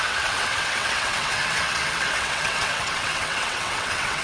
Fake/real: fake